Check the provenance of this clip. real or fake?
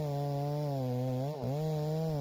real